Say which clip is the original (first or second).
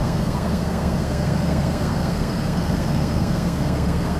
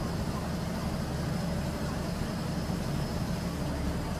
second